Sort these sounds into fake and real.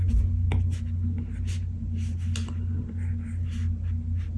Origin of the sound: real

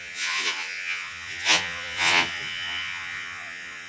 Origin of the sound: fake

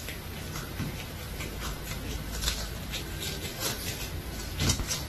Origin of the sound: real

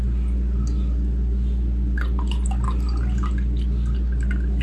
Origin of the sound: real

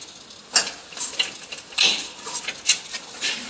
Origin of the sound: real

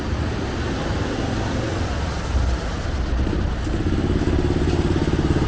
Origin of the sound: real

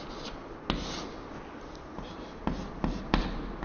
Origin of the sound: real